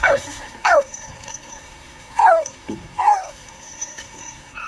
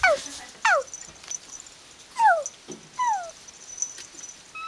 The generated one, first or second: first